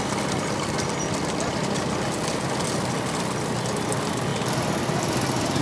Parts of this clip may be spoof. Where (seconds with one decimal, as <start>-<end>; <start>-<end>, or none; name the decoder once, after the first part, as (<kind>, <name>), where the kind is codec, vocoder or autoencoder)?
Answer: none